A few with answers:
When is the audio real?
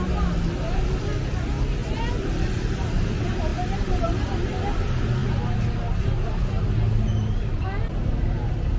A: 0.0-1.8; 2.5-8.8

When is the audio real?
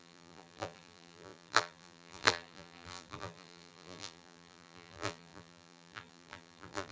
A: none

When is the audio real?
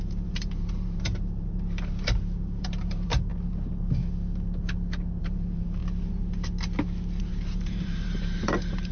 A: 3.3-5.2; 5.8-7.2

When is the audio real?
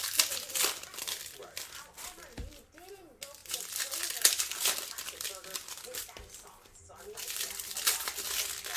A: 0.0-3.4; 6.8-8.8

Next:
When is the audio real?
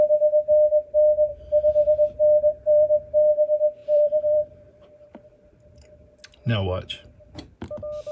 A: 0.0-1.3; 3.0-3.8; 4.9-8.1